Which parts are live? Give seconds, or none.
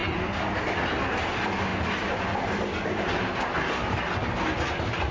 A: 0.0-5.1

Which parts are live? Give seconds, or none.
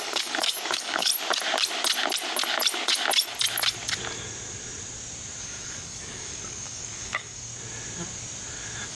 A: 1.1-5.4; 7.5-8.9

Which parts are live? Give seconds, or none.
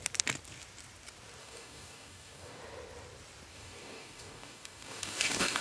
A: 0.0-1.4; 2.6-3.5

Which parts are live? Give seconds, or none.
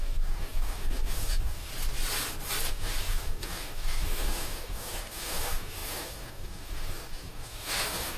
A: 1.7-2.7